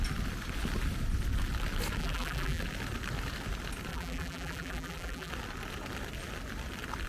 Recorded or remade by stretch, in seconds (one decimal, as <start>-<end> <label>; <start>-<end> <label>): 0.0-2.0 recorded; 2.0-2.6 remade; 2.6-3.9 recorded; 3.9-5.3 remade; 5.3-7.1 recorded